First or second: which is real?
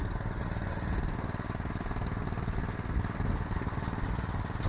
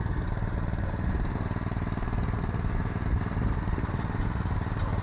first